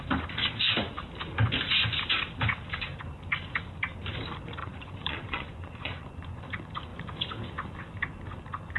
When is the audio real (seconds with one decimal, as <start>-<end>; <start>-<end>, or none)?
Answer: 0.0-4.6; 6.4-8.8